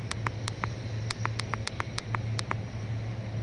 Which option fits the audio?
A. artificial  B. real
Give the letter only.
B